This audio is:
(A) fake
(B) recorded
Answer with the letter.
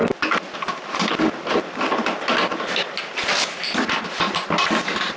B